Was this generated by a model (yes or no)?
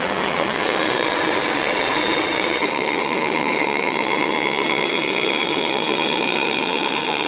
yes